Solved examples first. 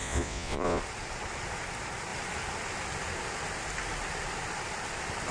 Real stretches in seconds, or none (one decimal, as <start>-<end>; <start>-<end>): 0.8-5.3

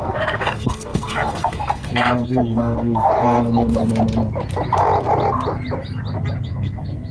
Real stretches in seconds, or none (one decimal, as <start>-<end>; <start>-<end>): 3.8-6.4

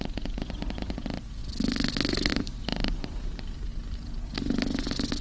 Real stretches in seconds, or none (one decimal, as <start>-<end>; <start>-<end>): 3.7-5.2

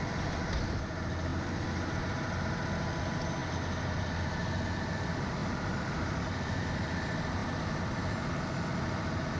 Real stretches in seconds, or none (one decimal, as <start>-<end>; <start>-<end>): 0.0-5.4; 6.2-9.4